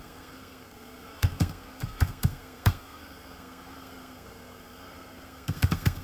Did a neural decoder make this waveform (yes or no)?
yes